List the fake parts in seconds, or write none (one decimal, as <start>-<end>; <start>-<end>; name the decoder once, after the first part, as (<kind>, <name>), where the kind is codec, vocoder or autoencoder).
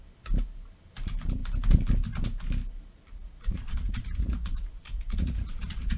3.1-6.0 (vocoder, Vocos)